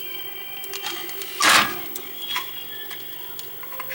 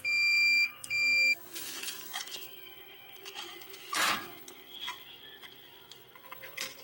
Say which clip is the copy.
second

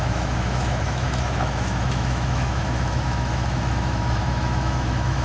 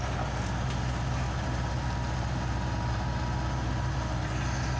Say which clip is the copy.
first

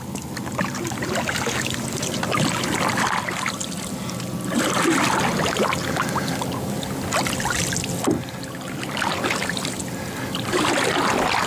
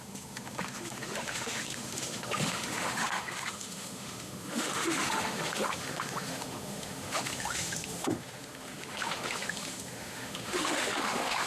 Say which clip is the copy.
second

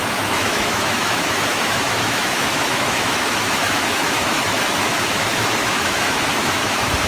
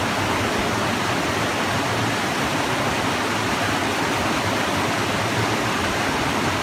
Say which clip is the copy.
first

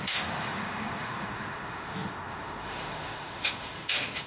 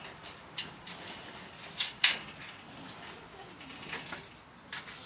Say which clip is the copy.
first